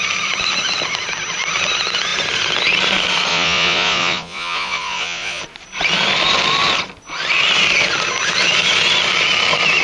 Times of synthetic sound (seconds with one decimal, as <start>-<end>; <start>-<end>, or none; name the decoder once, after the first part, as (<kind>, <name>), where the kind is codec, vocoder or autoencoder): 3.3-5.4 (vocoder, Vocos)